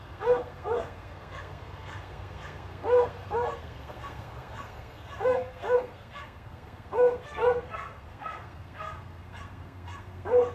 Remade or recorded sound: remade